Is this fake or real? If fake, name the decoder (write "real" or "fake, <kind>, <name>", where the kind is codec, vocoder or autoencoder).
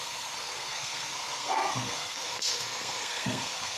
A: fake, codec, SNAC